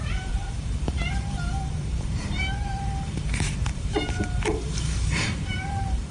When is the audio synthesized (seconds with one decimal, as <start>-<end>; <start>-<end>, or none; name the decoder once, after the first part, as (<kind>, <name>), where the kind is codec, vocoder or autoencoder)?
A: 0.0-6.1 (vocoder, BigVGAN v2)